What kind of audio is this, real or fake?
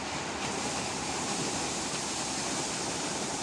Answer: fake